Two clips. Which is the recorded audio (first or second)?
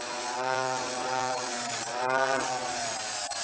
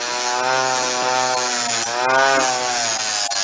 second